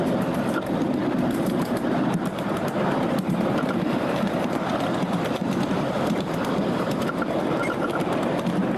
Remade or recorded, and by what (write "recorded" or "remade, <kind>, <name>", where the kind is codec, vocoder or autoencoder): remade, vocoder, BigVGAN v2